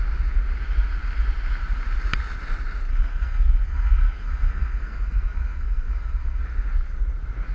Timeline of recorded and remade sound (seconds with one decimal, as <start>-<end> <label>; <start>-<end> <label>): 0.0-2.9 recorded; 2.9-6.4 remade; 6.4-7.5 recorded